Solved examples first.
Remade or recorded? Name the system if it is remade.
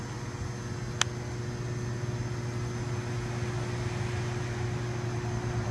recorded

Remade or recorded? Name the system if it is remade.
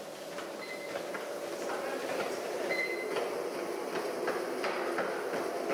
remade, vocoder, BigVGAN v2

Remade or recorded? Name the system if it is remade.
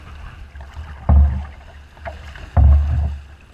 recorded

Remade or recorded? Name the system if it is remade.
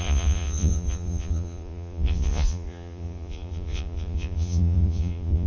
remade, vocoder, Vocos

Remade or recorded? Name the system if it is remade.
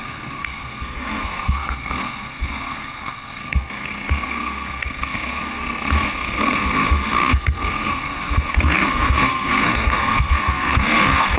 remade, codec, SNAC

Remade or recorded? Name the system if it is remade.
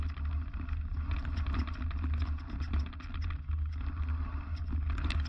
recorded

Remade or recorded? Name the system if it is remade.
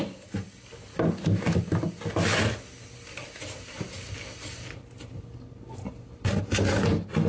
recorded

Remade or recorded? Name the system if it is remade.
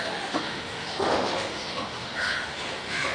remade, autoencoder, DAC-VAE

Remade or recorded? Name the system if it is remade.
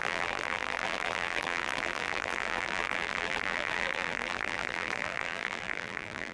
remade, vocoder, BigVGAN v2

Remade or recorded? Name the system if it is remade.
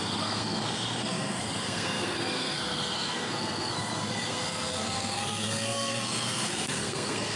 remade, codec, SNAC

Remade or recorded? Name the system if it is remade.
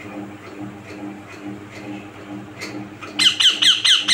recorded